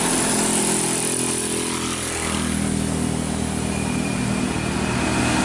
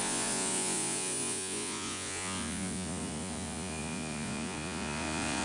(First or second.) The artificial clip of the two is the second